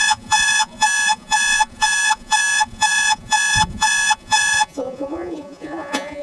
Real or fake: fake